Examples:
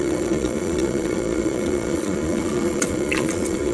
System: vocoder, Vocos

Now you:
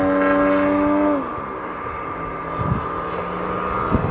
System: none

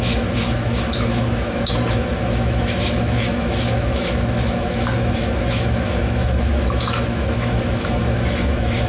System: autoencoder, DAC-VAE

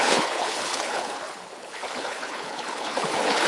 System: codec, HILCodec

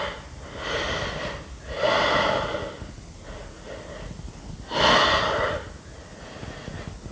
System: none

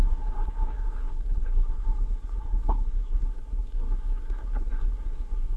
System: codec, SNAC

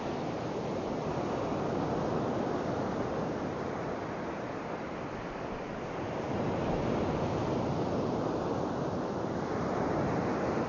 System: none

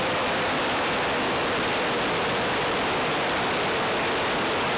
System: none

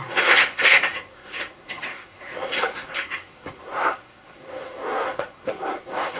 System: codec, SNAC